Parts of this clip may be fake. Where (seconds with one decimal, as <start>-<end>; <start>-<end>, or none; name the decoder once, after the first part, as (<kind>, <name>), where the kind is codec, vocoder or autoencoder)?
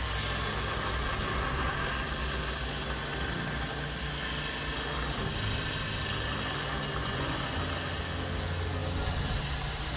7.0-7.6 (vocoder, Vocos)